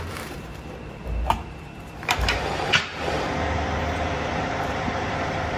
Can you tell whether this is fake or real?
fake